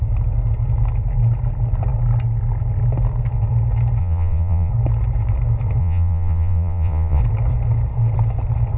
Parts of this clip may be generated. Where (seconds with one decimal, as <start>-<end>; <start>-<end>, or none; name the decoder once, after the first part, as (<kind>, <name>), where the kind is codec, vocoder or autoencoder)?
4.0-4.7 (vocoder, Vocos); 5.8-7.2